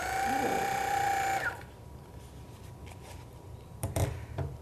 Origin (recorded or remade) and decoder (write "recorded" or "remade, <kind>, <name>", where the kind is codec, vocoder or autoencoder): remade, vocoder, BigVGAN v2